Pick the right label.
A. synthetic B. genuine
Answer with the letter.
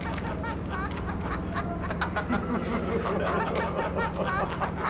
B